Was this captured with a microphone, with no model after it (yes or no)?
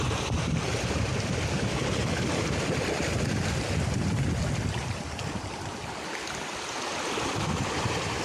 yes